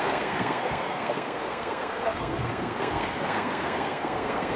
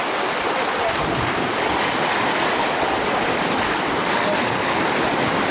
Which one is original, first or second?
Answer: second